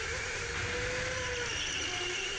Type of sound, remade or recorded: recorded